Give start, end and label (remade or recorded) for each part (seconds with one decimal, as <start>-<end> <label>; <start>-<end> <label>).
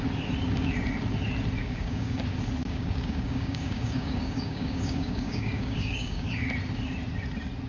0.0-1.6 recorded; 1.6-2.2 remade; 2.2-2.6 recorded; 2.6-6.5 remade; 6.5-7.7 recorded